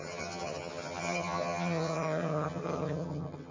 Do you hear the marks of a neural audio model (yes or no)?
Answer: yes